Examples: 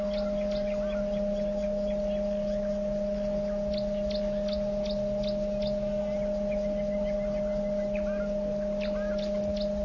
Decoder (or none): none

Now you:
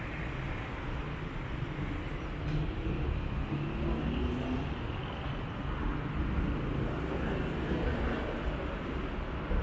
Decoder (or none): none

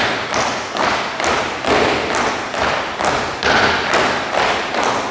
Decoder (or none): none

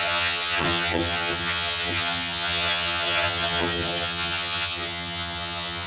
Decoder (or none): vocoder, HiFi-GAN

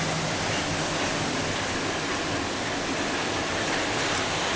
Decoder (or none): none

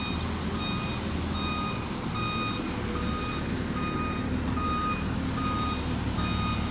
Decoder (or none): none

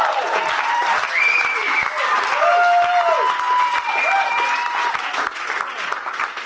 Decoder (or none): none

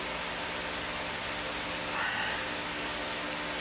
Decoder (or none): none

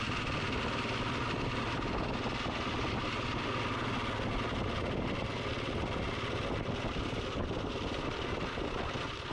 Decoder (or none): none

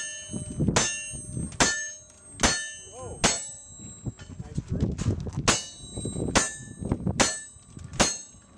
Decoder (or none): none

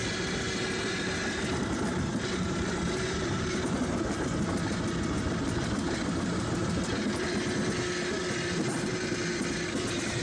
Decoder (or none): none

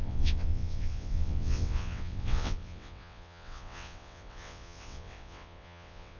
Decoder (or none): vocoder, WaveNeXt